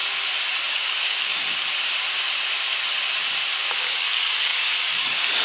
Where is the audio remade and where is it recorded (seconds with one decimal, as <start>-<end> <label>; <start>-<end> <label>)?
0.0-0.7 recorded; 0.7-1.3 remade; 1.3-3.6 recorded; 3.6-5.4 remade